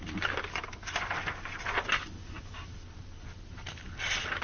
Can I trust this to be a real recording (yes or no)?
yes